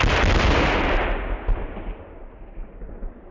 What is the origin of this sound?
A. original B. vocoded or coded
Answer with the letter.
A